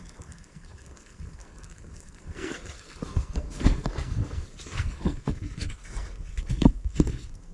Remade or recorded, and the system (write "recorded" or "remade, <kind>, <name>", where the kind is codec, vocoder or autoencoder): remade, codec, SNAC